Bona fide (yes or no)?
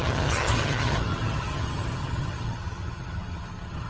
no